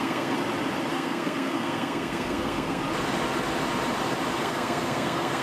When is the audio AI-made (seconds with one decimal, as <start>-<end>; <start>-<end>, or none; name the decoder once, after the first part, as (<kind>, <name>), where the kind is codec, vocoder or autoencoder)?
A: 0.0-0.4 (codec, SNAC); 0.9-2.8; 4.4-5.4